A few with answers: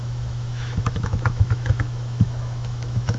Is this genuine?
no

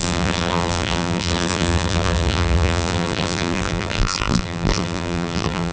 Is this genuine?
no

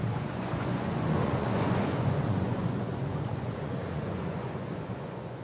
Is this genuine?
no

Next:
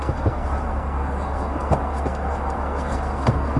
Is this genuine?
no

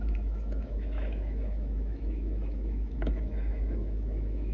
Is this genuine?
no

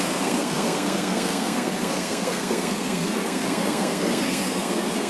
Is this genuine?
no